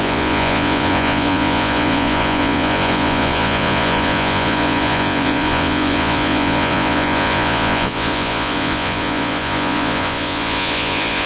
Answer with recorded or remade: remade